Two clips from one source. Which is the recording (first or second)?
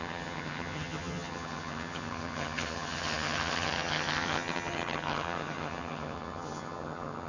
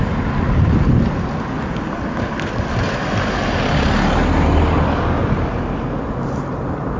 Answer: second